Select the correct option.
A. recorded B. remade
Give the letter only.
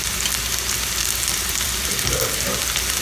B